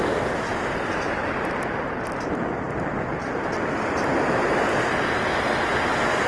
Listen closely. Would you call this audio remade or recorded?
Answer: recorded